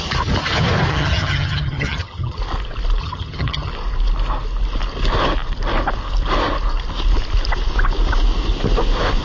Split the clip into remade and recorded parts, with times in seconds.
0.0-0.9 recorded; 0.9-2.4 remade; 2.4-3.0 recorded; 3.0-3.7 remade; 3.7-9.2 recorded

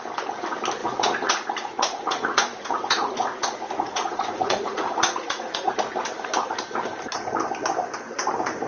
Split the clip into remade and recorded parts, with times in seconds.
0.0-0.8 recorded; 0.8-5.7 remade; 5.7-8.7 recorded

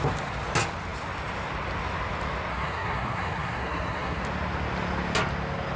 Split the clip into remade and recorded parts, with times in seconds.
0.0-2.5 recorded; 2.5-4.2 remade; 4.2-5.8 recorded

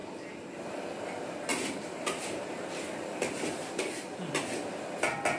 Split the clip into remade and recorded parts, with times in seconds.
0.0-1.5 recorded; 1.5-3.8 remade; 3.8-5.4 recorded

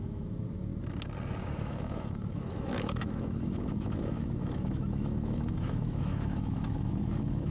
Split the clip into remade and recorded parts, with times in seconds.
0.0-0.7 remade; 0.7-1.4 recorded; 1.4-7.5 remade

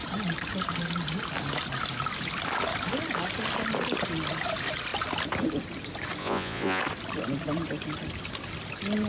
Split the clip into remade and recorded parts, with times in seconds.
0.0-6.2 recorded; 6.2-6.8 remade; 6.8-9.1 recorded

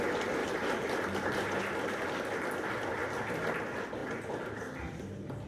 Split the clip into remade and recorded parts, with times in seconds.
0.0-5.5 recorded

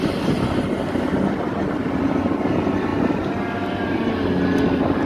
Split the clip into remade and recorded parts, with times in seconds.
0.0-5.1 recorded